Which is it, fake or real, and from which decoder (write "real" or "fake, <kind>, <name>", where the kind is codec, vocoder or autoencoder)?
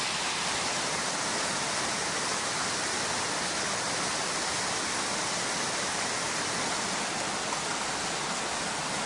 real